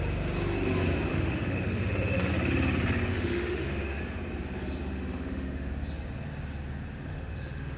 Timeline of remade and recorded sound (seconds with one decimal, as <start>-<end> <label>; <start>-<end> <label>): 0.0-1.1 recorded; 1.1-2.3 remade; 2.3-3.1 recorded; 3.1-4.0 remade; 4.0-4.8 recorded; 4.8-5.7 remade; 5.7-7.1 recorded; 7.1-7.8 remade